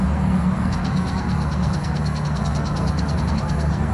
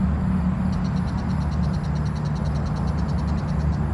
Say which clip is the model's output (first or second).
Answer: first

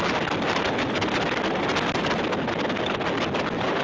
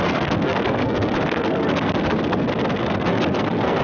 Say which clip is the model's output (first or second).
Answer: second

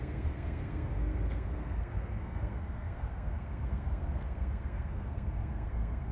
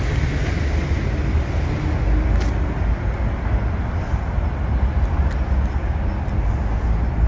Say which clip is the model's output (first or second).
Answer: first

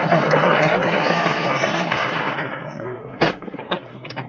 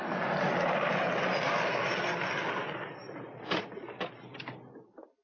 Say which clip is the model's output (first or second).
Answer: first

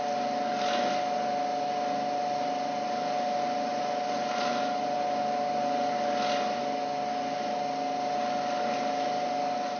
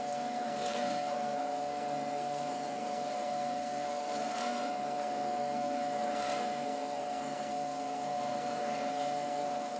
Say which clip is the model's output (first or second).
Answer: second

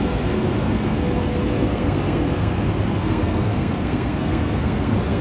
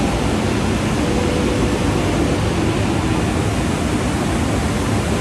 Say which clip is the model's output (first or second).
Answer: first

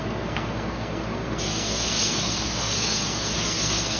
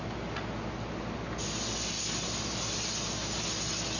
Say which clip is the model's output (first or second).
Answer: first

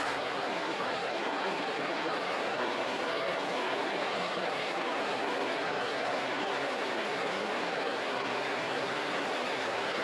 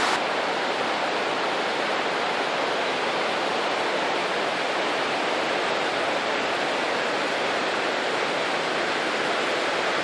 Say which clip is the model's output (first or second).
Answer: first